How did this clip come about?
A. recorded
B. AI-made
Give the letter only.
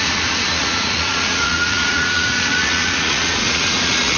B